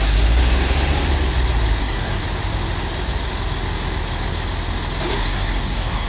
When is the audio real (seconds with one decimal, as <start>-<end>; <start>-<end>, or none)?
0.4-1.8; 2.2-5.1